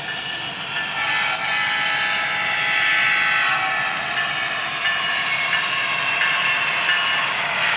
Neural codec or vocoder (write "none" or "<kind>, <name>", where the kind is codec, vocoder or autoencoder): none